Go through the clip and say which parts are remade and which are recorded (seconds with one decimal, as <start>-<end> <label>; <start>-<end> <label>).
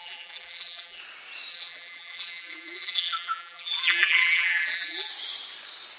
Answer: 0.0-1.0 remade; 1.0-1.5 recorded; 1.5-5.1 remade; 5.1-6.0 recorded